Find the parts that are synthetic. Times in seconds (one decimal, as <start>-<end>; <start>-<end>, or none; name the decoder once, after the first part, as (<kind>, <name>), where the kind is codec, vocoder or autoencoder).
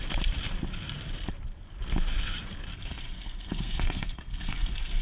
2.7-5.0 (codec, SNAC)